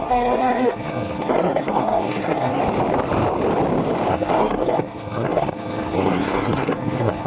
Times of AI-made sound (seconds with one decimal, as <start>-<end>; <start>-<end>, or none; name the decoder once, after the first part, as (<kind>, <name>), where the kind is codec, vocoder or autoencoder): 0.0-2.6 (codec, SNAC); 4.1-7.3